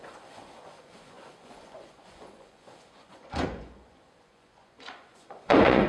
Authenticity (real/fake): fake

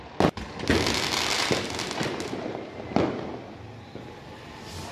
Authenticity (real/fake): real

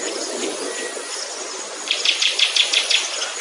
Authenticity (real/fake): fake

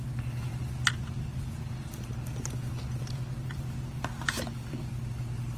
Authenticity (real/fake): real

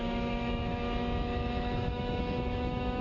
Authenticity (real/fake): fake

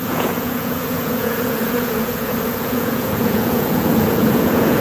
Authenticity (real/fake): fake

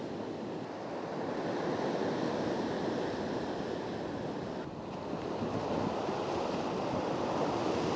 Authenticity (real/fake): real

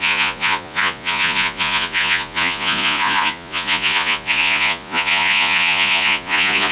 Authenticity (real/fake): fake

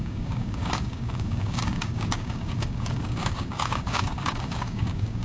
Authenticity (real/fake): fake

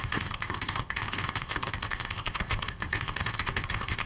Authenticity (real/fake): fake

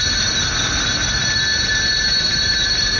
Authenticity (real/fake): real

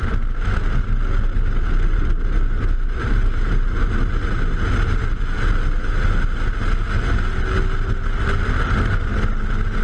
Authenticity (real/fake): real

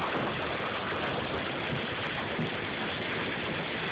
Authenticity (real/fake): real